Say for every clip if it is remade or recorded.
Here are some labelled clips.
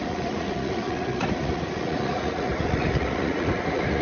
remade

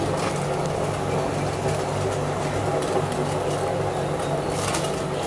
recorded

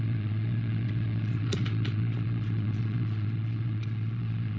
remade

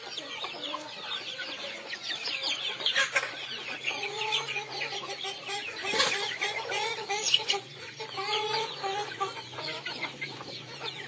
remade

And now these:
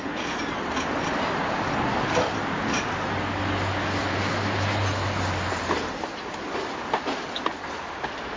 recorded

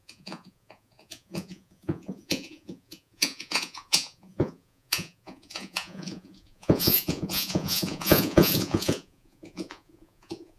remade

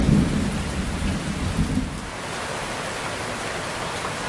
recorded